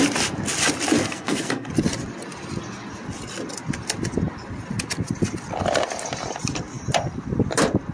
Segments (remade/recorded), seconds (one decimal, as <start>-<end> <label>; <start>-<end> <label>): 0.0-1.0 recorded; 1.0-1.7 remade; 1.7-7.9 recorded